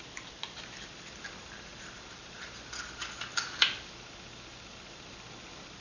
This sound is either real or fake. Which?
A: real